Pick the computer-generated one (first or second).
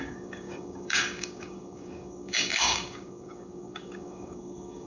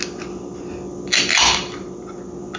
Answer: first